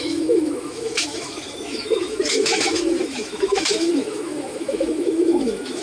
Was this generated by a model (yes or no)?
yes